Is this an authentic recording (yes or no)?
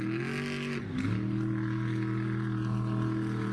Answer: yes